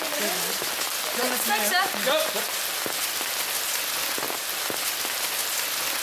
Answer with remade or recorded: recorded